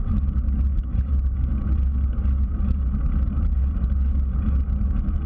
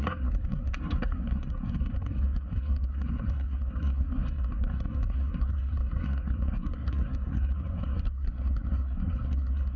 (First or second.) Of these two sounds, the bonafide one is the first